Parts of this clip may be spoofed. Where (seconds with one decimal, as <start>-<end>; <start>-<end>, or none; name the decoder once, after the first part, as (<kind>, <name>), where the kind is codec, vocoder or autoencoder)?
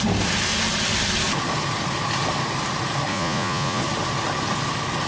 3.1-3.8 (vocoder, Vocos)